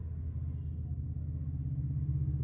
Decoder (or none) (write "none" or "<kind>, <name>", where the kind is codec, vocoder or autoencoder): none